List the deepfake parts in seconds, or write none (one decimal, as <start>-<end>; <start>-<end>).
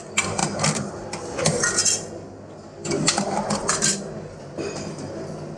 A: 0.4-0.9